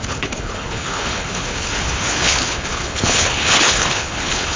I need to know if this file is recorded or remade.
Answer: remade